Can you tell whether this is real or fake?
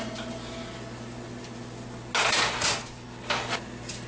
real